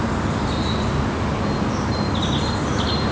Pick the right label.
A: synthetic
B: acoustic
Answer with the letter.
B